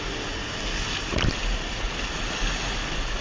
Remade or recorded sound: recorded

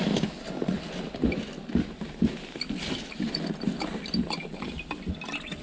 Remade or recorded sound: recorded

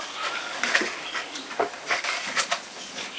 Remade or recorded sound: remade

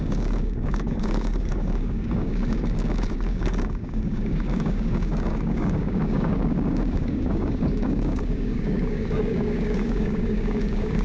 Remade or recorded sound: remade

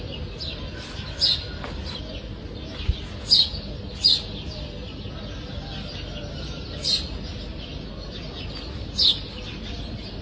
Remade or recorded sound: recorded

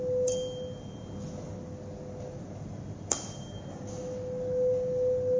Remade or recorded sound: recorded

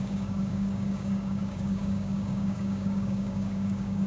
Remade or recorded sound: remade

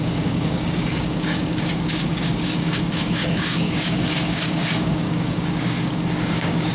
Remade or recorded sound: remade